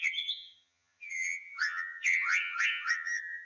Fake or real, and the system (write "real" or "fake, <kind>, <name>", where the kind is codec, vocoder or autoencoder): fake, vocoder, HiFi-GAN